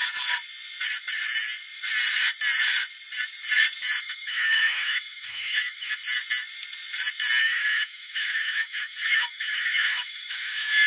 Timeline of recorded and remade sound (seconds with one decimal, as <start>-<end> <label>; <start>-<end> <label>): 0.0-4.0 recorded; 4.0-6.0 remade; 6.0-7.4 recorded; 7.4-10.9 remade